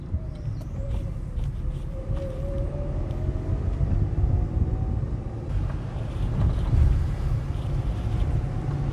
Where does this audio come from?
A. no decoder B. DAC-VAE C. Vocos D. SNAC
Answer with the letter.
A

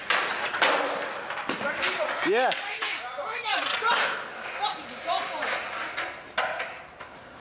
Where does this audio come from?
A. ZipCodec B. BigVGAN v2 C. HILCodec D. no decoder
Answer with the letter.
D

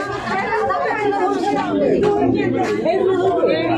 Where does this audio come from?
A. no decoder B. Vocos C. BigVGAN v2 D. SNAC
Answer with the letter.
A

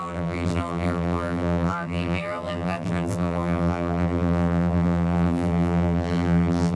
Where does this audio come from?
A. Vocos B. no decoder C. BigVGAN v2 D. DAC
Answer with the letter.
C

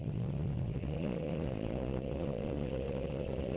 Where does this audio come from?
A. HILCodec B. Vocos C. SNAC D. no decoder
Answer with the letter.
B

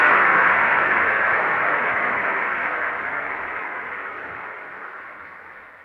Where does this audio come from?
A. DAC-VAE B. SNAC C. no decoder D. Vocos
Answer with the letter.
B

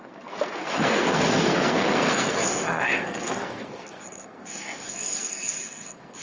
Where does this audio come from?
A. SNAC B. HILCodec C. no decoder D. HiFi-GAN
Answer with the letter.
A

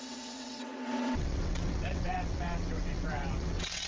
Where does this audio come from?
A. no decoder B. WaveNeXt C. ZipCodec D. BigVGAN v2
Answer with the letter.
B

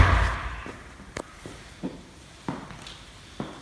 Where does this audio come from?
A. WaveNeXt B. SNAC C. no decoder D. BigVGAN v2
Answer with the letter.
C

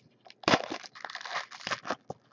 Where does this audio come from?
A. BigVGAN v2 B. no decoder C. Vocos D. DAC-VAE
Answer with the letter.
B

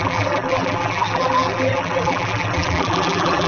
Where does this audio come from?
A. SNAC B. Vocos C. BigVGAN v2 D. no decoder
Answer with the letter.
C